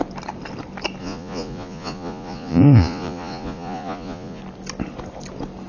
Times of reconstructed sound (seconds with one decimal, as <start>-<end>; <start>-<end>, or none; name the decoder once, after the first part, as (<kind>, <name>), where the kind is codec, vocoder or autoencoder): 1.0-4.4 (vocoder, Vocos)

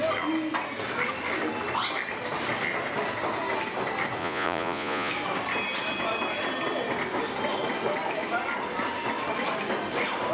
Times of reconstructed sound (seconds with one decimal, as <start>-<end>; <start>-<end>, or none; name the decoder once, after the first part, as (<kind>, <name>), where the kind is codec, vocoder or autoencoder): 4.2-5.1 (vocoder, Vocos)

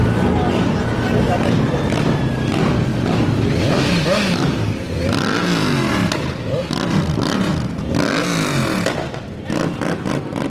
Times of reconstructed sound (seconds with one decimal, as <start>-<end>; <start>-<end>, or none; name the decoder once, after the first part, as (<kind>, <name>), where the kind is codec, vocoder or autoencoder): none

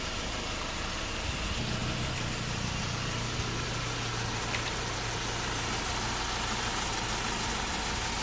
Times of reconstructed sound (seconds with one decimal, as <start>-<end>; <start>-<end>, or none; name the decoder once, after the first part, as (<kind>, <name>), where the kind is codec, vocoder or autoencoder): none

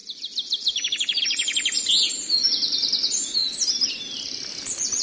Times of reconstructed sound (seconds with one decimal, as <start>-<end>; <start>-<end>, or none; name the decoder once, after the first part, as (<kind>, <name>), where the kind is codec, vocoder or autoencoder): none